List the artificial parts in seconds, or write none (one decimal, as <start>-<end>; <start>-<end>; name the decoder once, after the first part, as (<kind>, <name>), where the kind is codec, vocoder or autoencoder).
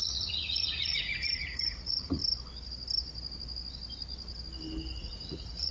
0.0-2.2 (vocoder, Vocos); 5.0-5.7